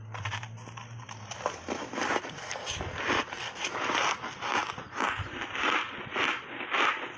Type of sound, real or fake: real